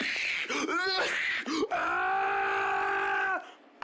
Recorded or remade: recorded